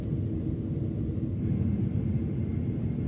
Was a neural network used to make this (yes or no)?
no